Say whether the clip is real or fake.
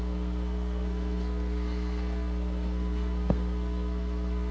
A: fake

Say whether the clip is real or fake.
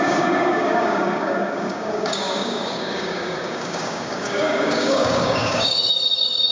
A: fake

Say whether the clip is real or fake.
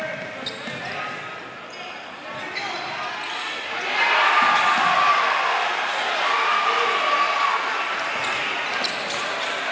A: real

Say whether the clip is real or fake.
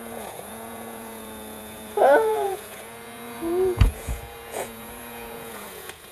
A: fake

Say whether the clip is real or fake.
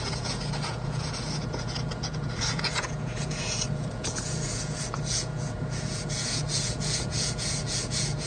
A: fake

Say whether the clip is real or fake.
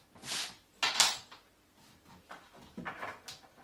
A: real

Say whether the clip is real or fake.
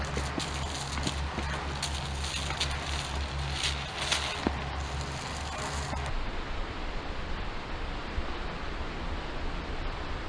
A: real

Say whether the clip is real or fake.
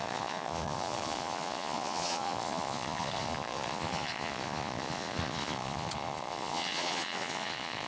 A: fake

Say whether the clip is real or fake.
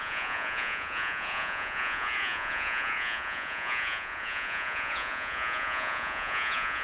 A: fake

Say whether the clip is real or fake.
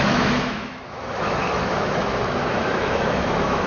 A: fake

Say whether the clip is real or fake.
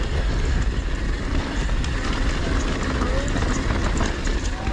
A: real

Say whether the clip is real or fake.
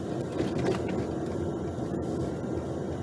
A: real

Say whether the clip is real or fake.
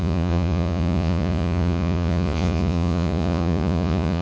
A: fake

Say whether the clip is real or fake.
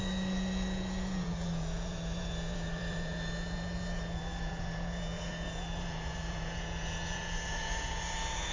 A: fake